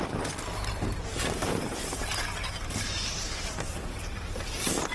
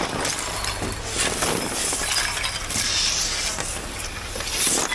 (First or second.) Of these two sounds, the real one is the second